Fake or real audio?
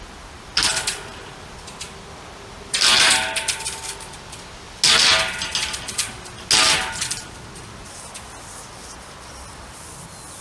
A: real